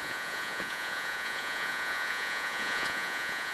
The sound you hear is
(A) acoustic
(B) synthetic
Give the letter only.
B